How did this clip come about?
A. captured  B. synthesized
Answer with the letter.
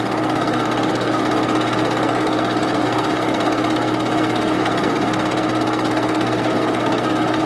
B